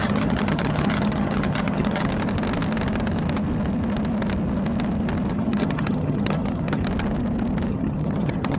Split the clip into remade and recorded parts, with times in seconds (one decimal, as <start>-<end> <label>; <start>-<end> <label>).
0.0-2.1 remade; 2.1-5.3 recorded; 5.3-6.8 remade; 6.8-7.7 recorded; 7.7-8.6 remade